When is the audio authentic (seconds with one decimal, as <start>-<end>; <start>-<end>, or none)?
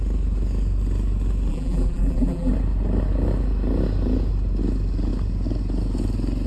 0.0-1.5; 2.5-6.5